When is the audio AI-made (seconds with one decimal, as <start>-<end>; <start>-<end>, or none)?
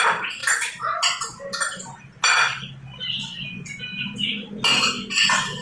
none